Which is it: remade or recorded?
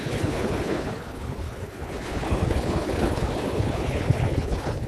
remade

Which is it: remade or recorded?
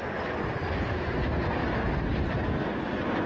recorded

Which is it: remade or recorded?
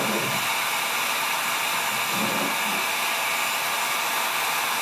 recorded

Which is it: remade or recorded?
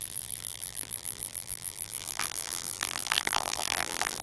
remade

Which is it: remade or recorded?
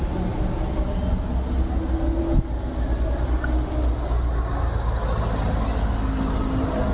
recorded